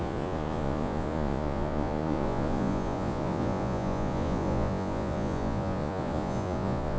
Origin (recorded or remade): remade